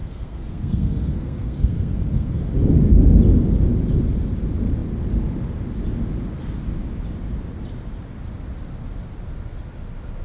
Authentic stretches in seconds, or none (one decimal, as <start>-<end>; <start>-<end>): 2.4-10.2